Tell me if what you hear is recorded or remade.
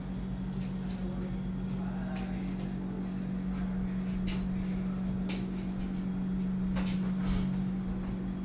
recorded